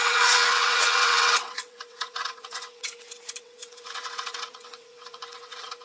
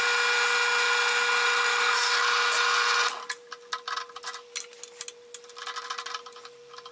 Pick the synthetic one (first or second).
first